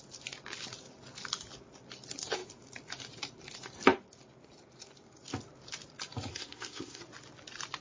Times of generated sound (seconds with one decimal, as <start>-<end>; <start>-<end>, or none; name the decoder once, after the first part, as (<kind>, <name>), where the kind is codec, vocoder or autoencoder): 6.3-7.0 (codec, SNAC)